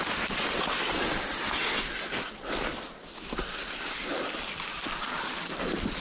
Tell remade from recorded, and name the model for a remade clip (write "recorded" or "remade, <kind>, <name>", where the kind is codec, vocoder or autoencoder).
recorded